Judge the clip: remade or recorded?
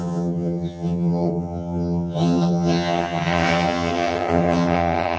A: remade